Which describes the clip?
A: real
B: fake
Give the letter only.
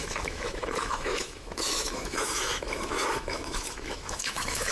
B